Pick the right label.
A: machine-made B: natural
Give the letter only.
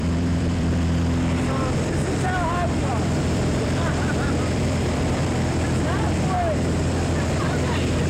A